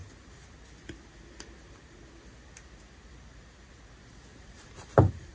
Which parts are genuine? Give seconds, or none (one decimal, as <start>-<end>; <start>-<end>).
0.0-4.3